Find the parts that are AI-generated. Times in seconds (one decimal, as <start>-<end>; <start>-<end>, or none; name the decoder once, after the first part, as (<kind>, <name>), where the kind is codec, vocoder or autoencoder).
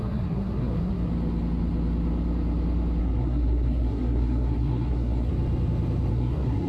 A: 0.0-1.1 (codec, SNAC); 3.0-5.3; 6.1-6.7